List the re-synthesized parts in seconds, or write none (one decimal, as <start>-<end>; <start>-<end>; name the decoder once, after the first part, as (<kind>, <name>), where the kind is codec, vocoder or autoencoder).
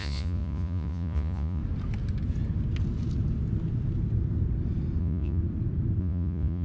0.0-1.6 (vocoder, Vocos); 5.0-5.4; 6.0-6.6